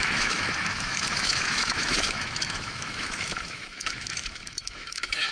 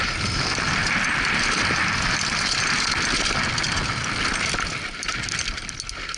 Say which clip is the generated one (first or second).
first